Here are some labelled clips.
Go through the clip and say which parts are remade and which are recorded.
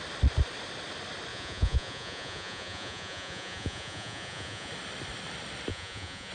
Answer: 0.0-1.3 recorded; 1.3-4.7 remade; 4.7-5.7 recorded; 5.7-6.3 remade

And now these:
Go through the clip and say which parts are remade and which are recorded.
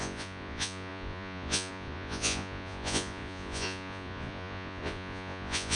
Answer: 0.0-5.8 remade